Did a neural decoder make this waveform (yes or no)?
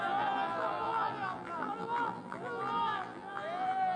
yes